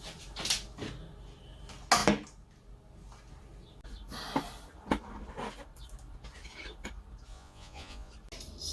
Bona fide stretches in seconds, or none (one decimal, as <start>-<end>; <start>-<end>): 0.0-7.3; 8.1-8.7